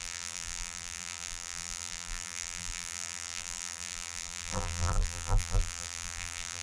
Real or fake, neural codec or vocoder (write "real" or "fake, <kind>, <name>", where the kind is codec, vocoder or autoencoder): fake, vocoder, BigVGAN v2